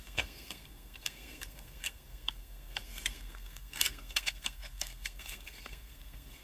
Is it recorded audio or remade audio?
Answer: remade